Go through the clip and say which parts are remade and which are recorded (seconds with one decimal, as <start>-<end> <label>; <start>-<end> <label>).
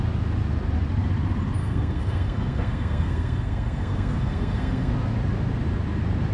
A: 0.0-1.6 recorded; 1.6-4.9 remade; 4.9-6.3 recorded